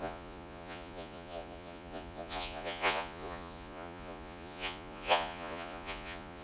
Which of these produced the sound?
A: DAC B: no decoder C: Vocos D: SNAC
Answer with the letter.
C